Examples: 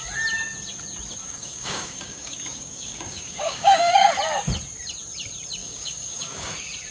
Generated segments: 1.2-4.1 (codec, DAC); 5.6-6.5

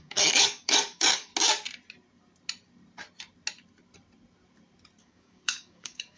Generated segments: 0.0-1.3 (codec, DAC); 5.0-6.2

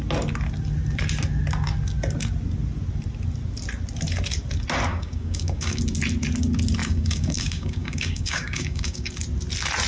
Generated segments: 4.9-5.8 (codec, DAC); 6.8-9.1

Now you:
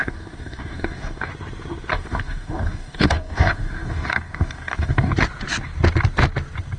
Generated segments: 0.0-1.3 (codec, DAC); 1.9-5.1

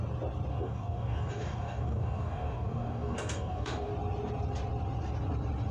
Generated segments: 0.5-3.9 (codec, DAC)

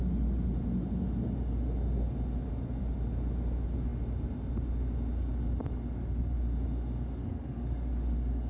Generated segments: 7.2-8.5 (codec, DAC)

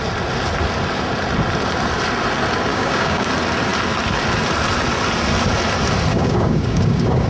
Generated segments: 2.7-3.3 (codec, DAC); 6.1-7.3

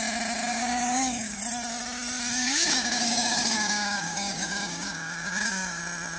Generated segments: 0.5-1.4 (codec, DAC); 2.4-5.8